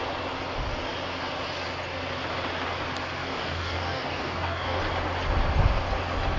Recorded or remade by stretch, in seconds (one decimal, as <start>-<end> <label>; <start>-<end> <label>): 0.0-3.2 recorded; 3.2-4.8 remade; 4.8-6.4 recorded